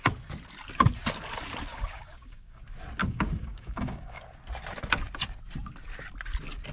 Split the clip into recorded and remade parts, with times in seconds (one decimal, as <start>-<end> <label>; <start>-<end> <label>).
0.0-1.7 recorded; 1.7-2.6 remade; 2.6-3.0 recorded; 3.0-4.2 remade; 4.2-6.7 recorded